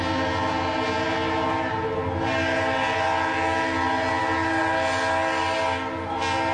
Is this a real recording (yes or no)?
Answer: yes